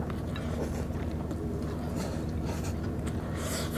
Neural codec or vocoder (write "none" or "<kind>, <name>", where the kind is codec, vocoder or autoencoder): none